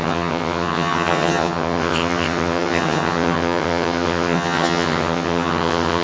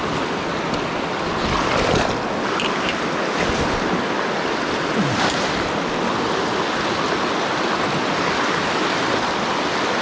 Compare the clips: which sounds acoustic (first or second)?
second